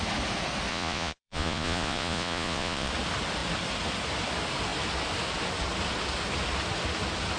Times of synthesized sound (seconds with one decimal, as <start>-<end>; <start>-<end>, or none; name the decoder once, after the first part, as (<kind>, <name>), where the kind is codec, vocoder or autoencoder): 0.7-2.9 (vocoder, Vocos)